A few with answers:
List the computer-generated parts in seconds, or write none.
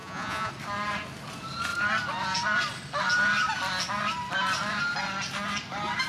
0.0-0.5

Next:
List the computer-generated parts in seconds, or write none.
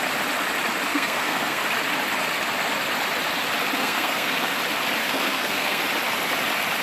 0.9-1.6; 3.8-4.6; 5.0-5.8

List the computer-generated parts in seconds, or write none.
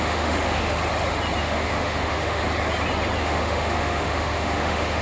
0.0-0.8; 1.4-2.4; 3.2-5.0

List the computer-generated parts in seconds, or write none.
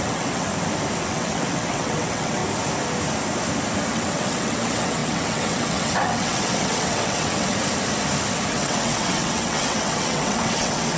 0.0-0.5; 1.0-2.4; 3.9-7.5; 8.5-11.0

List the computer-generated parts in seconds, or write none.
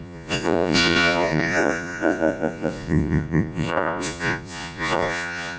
0.0-5.6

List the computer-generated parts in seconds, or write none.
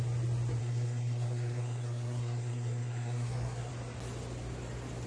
0.6-3.7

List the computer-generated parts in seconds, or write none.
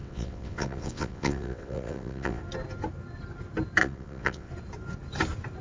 0.0-2.4; 3.8-4.5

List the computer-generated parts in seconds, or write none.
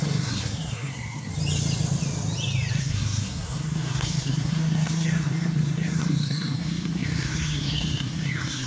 0.0-1.3; 2.7-8.7